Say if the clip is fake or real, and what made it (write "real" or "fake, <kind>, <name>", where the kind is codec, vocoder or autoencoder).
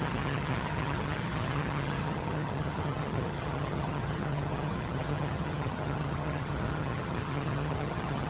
fake, vocoder, HiFi-GAN